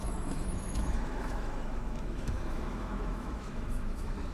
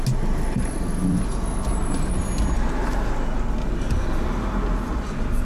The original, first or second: second